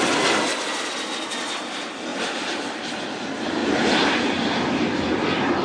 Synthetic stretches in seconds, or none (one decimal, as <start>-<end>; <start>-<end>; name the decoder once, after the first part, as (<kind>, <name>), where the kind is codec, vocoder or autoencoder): 2.1-3.0 (vocoder, BigVGAN v2); 3.6-5.0